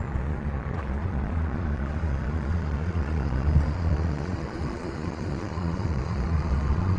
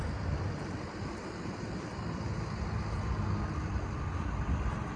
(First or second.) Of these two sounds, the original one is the second